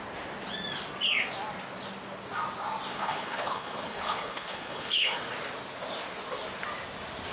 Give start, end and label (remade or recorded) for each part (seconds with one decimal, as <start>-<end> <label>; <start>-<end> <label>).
0.0-2.9 recorded; 2.9-5.2 remade; 5.2-7.3 recorded